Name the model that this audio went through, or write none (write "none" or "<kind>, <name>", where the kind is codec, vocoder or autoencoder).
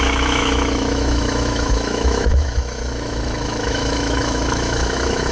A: autoencoder, DAC-VAE